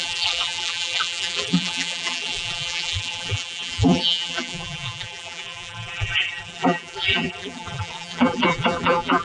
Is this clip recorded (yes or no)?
no